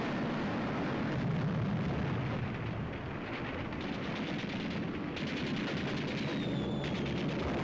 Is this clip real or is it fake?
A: real